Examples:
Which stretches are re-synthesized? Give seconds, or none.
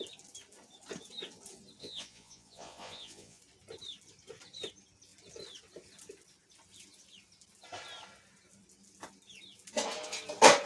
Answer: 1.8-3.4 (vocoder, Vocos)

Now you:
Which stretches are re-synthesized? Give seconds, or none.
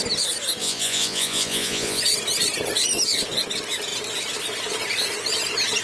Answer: 0.6-2.0 (vocoder, Vocos)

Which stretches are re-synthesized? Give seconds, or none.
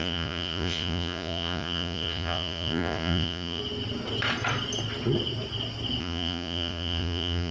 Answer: 0.0-3.6 (vocoder, Vocos); 6.0-7.5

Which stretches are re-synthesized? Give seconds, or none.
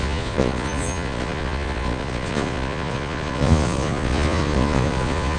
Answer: 0.0-5.4 (vocoder, Vocos)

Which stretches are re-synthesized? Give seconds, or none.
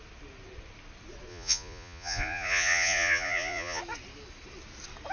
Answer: 1.3-3.8 (vocoder, Vocos)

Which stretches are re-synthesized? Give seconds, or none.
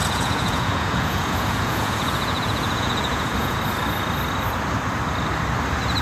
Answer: 0.0-3.6 (vocoder, Vocos)